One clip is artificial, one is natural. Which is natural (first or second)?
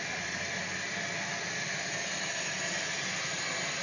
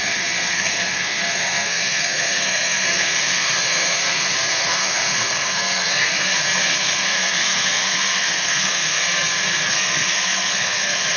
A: first